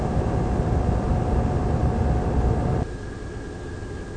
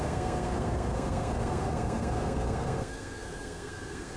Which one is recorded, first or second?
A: first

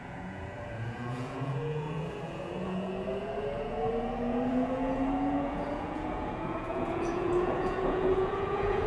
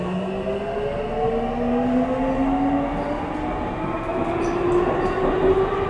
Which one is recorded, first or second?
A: second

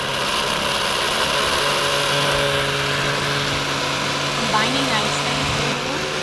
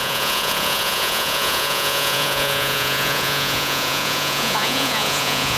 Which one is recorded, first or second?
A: first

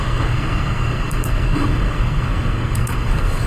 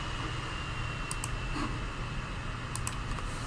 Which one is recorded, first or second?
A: second